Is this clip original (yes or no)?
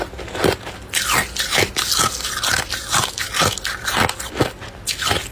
yes